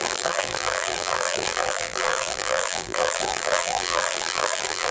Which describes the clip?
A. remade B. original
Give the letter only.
A